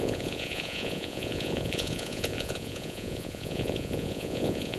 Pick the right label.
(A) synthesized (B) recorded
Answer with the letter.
A